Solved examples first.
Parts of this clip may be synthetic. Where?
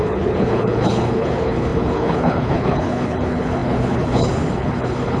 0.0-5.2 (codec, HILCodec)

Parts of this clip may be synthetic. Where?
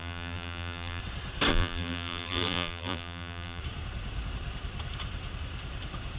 0.0-1.0 (vocoder, BigVGAN v2); 1.5-3.6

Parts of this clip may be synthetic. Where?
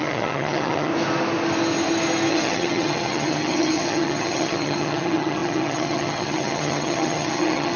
0.0-0.9 (vocoder, HiFi-GAN); 2.3-7.8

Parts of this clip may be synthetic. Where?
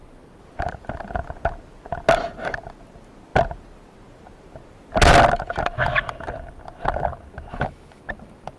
7.5-8.0 (autoencoder, DAC-VAE)